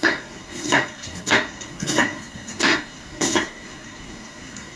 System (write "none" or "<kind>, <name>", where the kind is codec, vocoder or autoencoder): codec, SNAC